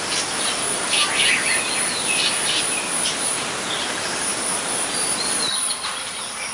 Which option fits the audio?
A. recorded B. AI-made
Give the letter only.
A